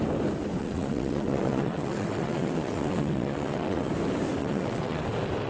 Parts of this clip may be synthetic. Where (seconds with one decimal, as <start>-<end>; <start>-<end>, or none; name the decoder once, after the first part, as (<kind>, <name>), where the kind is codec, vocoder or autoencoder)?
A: 0.6-3.9 (vocoder, WaveNeXt); 4.4-5.0